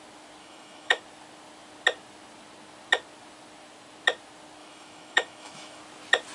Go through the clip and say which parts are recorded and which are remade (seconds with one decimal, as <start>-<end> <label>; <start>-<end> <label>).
0.0-0.4 recorded; 0.4-1.0 remade; 1.0-4.6 recorded; 4.6-5.8 remade; 5.8-6.3 recorded